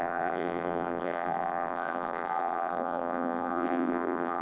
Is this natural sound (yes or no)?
no